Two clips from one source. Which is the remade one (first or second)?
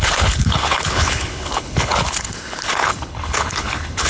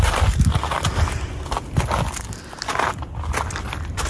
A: first